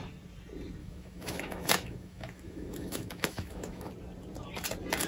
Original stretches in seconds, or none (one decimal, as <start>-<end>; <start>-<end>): 0.0-0.8; 3.9-5.1